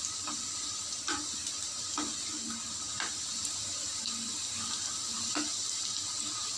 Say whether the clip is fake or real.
real